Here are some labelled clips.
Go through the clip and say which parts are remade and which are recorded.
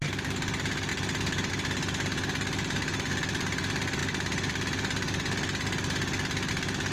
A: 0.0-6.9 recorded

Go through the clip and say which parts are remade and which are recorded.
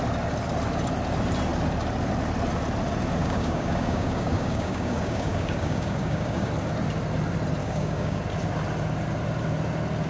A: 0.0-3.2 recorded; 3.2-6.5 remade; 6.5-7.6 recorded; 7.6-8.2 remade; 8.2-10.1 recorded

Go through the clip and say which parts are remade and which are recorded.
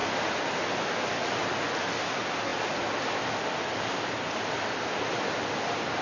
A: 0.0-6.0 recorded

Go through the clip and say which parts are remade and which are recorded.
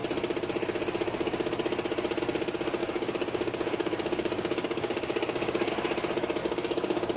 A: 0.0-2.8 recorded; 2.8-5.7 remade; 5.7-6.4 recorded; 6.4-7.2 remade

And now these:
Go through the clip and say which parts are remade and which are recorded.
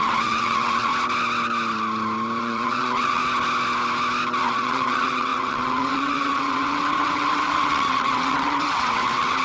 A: 0.0-0.9 remade; 0.9-2.4 recorded; 2.4-3.2 remade; 3.2-4.4 recorded; 4.4-9.4 remade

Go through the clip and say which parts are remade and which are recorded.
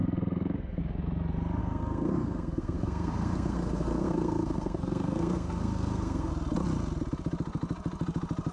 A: 0.0-0.8 remade; 0.8-1.6 recorded; 1.6-6.3 remade; 6.3-8.5 recorded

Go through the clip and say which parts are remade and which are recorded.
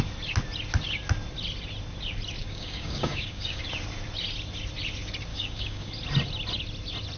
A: 0.0-2.4 recorded; 2.4-3.6 remade; 3.6-5.3 recorded; 5.3-5.9 remade; 5.9-7.2 recorded